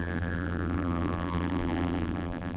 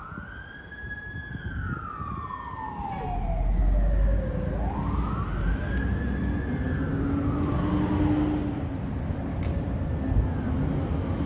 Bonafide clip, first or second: second